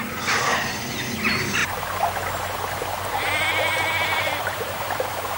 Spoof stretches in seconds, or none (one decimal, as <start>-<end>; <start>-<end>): none